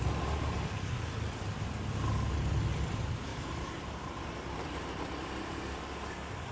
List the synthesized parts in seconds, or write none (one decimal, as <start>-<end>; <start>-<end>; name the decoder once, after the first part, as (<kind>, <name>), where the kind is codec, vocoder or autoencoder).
3.3-5.6 (vocoder, BigVGAN v2)